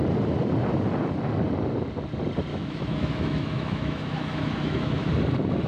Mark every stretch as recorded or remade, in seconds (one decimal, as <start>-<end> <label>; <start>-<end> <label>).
0.0-2.5 recorded; 2.5-5.1 remade; 5.1-5.7 recorded